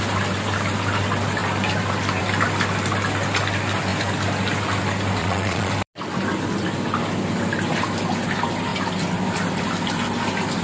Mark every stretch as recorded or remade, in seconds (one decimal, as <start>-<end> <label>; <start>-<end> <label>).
0.0-5.2 recorded; 5.2-5.7 remade; 5.7-10.6 recorded